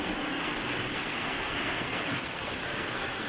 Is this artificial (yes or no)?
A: yes